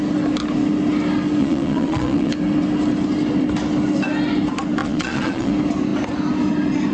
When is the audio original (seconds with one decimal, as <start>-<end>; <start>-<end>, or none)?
0.0-1.4; 2.3-4.8; 5.5-6.9